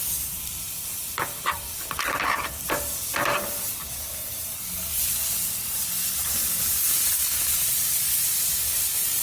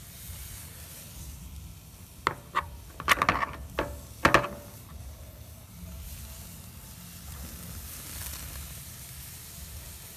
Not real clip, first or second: first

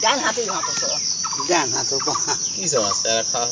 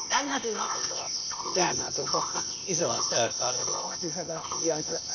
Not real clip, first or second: second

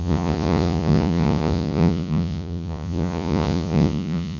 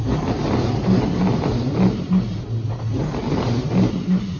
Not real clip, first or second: first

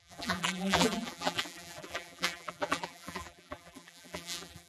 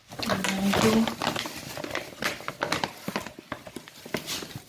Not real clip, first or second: first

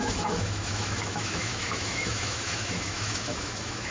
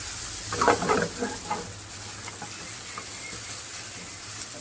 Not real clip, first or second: first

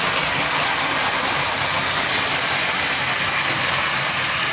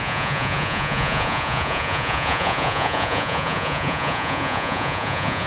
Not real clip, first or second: second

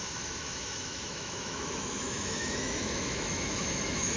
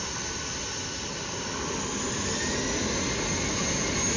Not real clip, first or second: first